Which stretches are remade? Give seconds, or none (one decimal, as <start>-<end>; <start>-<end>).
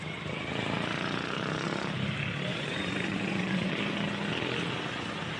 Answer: 2.5-3.7